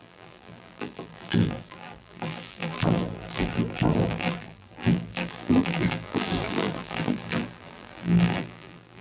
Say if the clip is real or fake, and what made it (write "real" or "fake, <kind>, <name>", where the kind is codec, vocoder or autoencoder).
fake, vocoder, BigVGAN v2